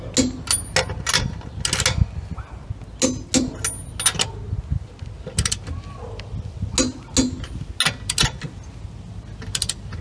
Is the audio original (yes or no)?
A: yes